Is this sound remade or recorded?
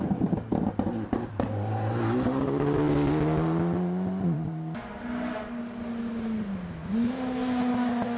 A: recorded